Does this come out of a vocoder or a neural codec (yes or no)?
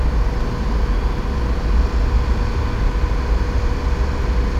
no